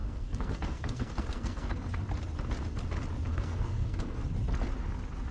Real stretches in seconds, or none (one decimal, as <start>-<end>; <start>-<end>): 1.7-3.3; 4.2-5.3